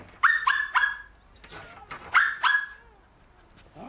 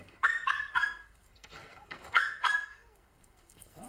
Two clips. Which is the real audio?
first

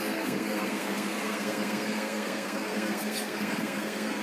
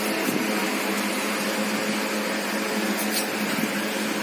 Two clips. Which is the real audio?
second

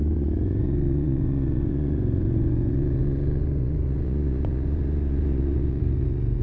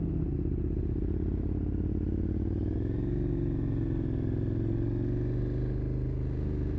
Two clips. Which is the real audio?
second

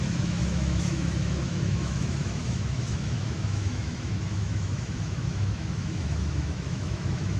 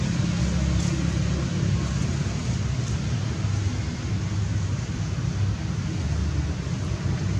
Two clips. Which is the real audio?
second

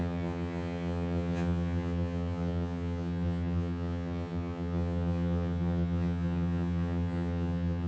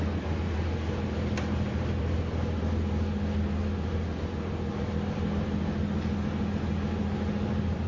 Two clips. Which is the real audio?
second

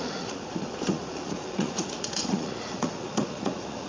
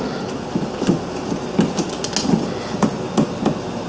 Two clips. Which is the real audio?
second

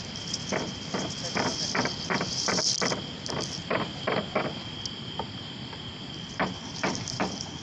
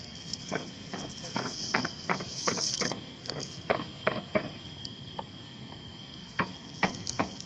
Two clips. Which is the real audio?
first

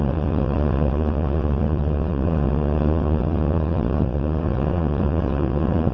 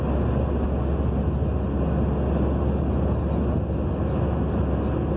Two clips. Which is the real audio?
second